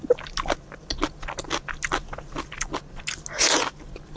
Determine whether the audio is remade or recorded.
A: recorded